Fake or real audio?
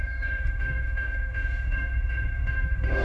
fake